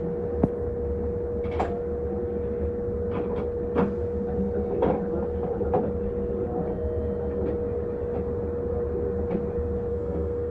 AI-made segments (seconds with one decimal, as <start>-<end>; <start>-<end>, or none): 9.9-10.5

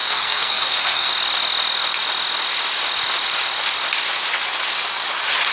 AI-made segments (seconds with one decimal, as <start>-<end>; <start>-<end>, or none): 0.0-1.1